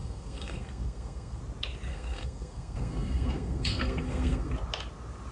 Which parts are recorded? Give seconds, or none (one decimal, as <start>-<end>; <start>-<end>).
1.4-1.9; 4.5-5.3